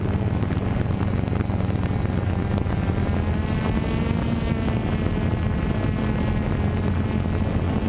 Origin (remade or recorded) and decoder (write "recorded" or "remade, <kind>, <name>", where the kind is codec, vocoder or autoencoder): recorded